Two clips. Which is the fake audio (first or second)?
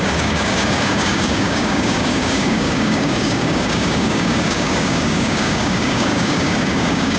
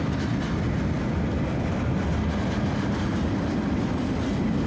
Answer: first